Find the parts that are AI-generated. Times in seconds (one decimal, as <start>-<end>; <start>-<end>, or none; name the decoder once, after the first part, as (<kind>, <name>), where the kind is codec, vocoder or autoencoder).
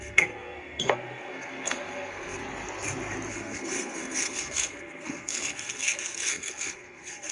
0.0-2.4 (codec, SNAC); 3.3-7.3